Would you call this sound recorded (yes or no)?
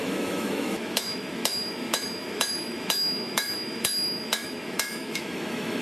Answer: no